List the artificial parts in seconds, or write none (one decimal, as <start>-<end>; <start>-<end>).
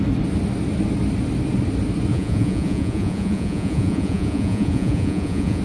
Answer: 2.1-5.6